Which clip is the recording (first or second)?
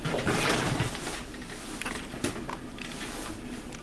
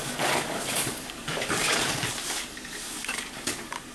first